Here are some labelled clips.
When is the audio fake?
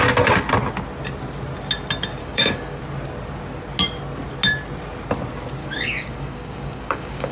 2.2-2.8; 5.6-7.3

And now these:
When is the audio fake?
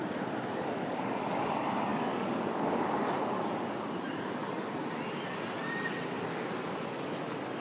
0.8-1.5; 1.9-2.8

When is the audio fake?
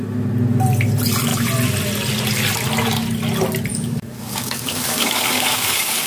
3.7-6.1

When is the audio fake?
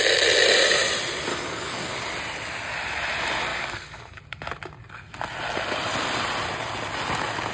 1.3-1.9; 3.5-4.2